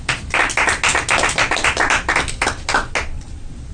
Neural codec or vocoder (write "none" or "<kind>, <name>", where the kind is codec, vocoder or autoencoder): none